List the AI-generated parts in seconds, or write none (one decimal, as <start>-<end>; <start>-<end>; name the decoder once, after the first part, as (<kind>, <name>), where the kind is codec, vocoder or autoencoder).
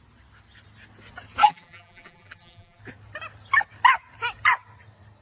1.4-2.8 (vocoder, BigVGAN v2)